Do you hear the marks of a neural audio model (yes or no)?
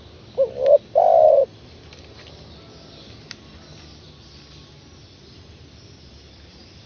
no